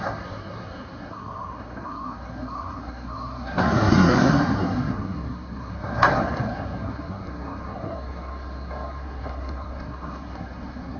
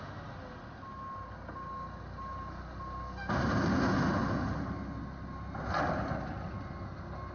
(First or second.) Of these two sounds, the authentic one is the second